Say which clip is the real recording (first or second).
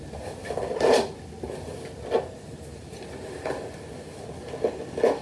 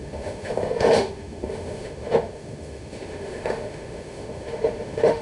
first